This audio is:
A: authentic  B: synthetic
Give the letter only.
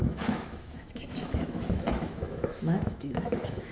B